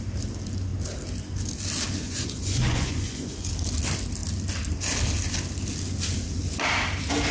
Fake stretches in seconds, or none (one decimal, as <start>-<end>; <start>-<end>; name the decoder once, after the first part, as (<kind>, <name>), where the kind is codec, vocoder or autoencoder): 2.0-3.5 (vocoder, Vocos)